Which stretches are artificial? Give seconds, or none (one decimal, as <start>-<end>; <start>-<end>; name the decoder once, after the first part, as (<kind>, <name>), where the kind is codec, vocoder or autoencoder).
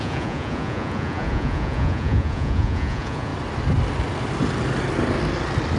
0.0-3.3 (vocoder, Vocos)